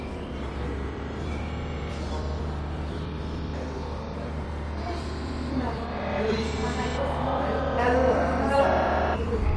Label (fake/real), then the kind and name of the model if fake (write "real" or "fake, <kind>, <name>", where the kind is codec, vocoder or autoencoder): fake, vocoder, BigVGAN v2